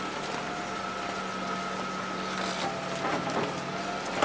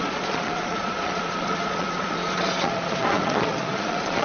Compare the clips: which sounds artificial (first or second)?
second